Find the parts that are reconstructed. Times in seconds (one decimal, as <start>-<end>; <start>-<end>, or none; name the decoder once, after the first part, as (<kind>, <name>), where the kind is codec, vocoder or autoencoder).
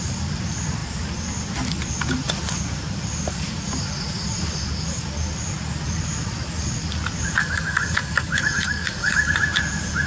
7.4-9.3 (codec, DAC)